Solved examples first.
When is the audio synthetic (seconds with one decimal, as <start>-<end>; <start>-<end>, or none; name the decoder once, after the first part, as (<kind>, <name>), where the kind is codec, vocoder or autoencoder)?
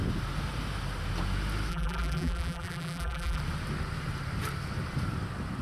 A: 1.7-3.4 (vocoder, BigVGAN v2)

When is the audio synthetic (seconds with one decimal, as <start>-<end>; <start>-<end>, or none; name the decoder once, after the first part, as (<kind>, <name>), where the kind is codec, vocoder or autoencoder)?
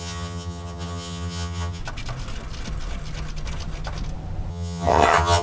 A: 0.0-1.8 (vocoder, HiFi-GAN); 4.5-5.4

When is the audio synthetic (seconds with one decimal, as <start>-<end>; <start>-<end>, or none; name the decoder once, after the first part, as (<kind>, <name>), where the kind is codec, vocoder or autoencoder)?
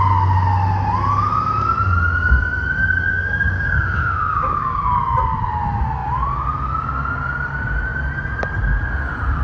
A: 2.8-5.0 (codec, DAC)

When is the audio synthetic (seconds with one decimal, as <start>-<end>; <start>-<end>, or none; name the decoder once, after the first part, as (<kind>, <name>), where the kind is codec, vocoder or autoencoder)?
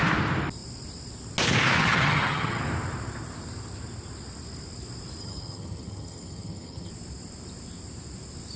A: 1.8-2.6 (vocoder, HiFi-GAN); 5.2-6.9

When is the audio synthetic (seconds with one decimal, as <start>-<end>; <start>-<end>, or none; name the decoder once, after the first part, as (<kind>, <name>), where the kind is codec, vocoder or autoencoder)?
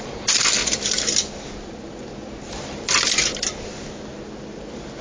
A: none